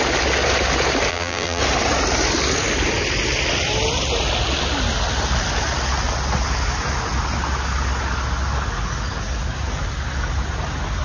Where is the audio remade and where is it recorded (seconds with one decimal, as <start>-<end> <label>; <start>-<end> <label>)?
0.0-1.1 recorded; 1.1-1.6 remade; 1.6-11.0 recorded